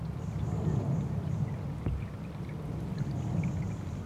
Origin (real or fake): real